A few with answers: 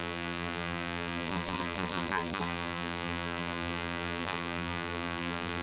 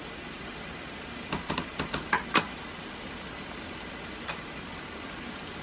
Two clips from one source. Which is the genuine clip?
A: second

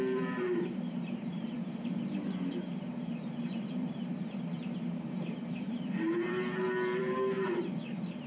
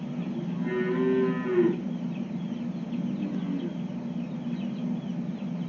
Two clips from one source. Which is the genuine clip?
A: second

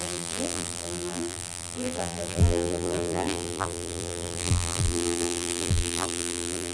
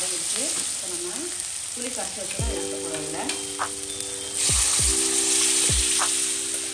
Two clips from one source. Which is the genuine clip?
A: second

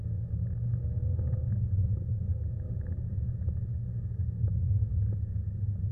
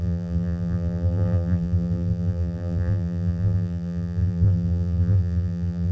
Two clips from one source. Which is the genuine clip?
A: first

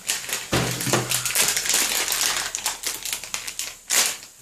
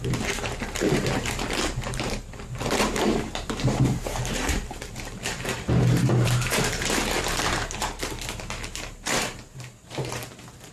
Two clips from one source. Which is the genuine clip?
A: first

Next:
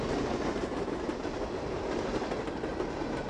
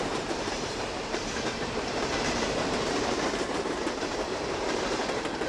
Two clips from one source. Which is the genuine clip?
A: first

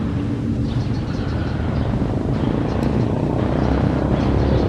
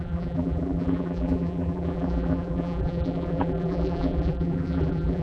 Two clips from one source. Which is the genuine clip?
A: first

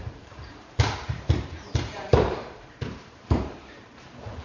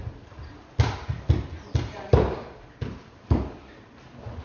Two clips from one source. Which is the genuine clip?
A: second